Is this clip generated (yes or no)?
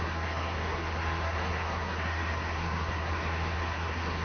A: yes